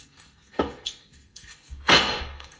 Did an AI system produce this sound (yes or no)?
yes